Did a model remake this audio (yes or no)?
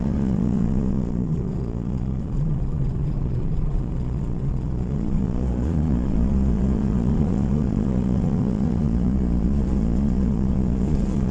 yes